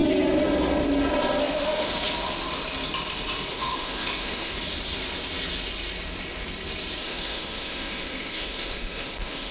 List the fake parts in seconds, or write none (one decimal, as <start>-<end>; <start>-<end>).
1.4-1.9; 3.5-4.5; 7.0-9.5